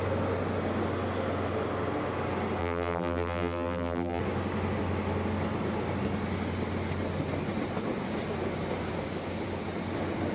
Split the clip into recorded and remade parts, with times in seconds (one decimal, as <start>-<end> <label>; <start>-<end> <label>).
0.0-2.6 recorded; 2.6-4.2 remade; 4.2-10.3 recorded